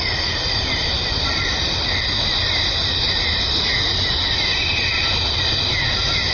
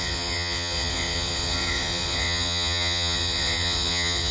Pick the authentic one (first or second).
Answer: first